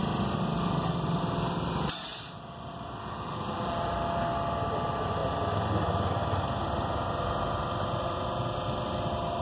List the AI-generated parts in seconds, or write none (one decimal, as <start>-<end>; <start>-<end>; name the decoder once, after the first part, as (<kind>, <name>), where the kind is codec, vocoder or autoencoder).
none